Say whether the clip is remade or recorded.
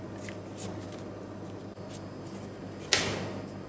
recorded